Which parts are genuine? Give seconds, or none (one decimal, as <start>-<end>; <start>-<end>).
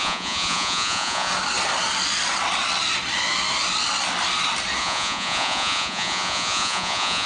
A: 1.3-4.8